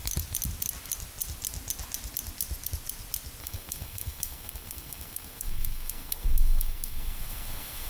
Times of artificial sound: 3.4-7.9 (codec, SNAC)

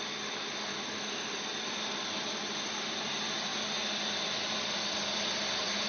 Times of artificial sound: 0.7-1.3 (autoencoder, DAC-VAE)

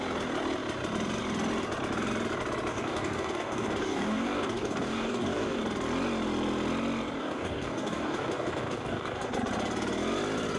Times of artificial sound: 2.7-5.6 (codec, DAC); 7.2-9.3

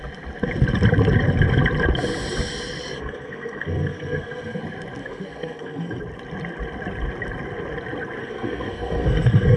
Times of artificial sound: 2.8-4.6 (codec, SNAC); 5.0-6.0; 8.2-9.6

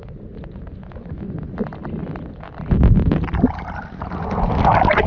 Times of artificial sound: none

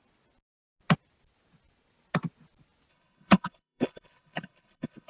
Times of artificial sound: 2.9-5.1 (codec, HILCodec)